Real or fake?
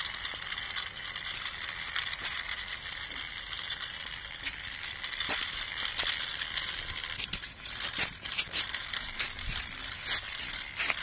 real